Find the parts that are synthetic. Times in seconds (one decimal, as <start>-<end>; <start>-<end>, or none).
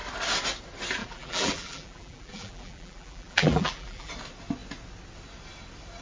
1.0-4.1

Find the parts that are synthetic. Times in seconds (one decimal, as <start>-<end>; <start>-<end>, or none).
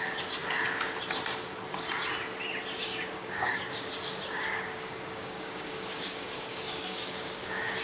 2.9-7.8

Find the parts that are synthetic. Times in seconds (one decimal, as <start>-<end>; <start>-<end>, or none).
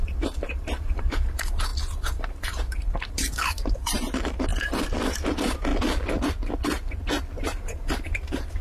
0.0-4.5; 5.1-5.7; 7.4-8.6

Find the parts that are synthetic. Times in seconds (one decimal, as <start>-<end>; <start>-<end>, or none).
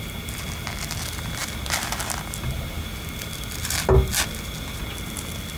none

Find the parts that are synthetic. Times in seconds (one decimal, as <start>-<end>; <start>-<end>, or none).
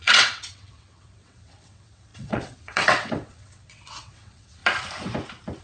0.0-4.6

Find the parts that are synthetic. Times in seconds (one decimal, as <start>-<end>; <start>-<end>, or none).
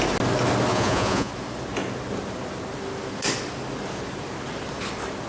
0.7-1.3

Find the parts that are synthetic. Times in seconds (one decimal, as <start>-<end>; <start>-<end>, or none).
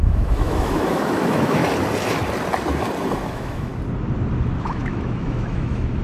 0.0-1.6; 3.3-3.7; 4.6-6.0